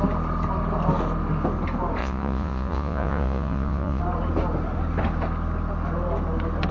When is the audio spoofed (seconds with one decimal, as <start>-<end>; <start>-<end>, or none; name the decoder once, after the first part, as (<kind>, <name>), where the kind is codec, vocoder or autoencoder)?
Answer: 2.0-4.0 (vocoder, Vocos)